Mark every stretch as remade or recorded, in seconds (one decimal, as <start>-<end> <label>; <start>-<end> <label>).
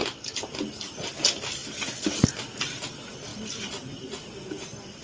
0.0-5.0 recorded